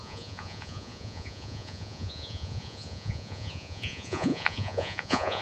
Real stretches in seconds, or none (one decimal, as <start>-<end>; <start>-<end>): none